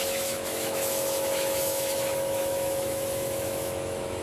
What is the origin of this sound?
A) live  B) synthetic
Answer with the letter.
B